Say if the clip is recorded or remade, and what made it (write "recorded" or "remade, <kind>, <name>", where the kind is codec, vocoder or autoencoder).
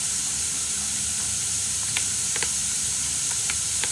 remade, vocoder, BigVGAN v2